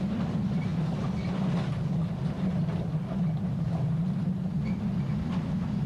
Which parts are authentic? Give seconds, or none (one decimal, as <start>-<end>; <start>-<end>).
0.0-5.9